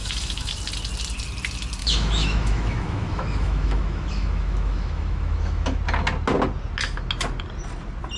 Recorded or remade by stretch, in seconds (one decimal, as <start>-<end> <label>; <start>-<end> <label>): 0.0-0.5 remade; 0.5-1.8 recorded; 1.8-5.8 remade; 5.8-8.2 recorded